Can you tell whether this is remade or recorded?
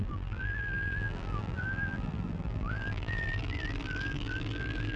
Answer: remade